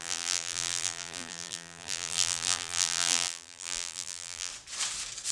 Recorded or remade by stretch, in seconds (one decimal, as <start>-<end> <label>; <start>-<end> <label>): 0.0-4.5 remade; 4.5-5.3 recorded